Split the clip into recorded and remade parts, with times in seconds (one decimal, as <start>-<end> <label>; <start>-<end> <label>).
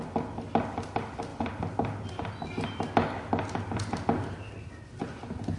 0.0-5.6 recorded